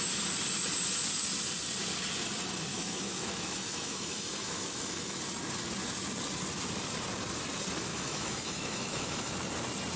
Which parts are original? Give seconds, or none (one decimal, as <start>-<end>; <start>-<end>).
0.0-2.7; 5.2-7.9; 9.3-10.0